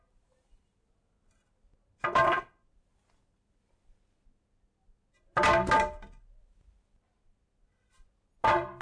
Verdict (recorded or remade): recorded